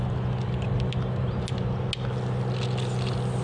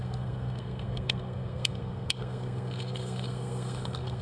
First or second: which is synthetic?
second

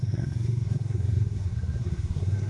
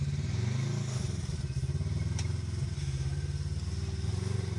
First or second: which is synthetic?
first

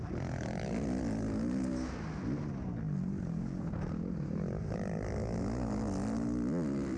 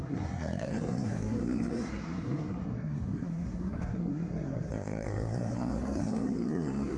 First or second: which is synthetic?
second